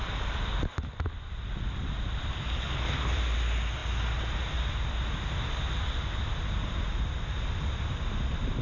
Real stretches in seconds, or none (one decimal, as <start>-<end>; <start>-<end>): 0.0-8.6